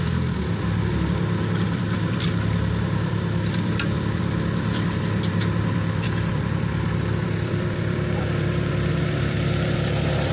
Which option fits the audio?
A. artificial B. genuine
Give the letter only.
A